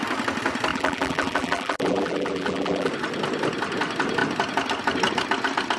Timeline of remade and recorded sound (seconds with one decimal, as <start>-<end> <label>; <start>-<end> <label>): 0.0-0.7 recorded; 0.7-2.9 remade; 2.9-5.8 recorded